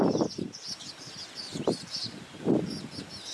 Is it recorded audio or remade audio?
recorded